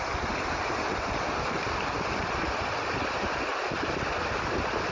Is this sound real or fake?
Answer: real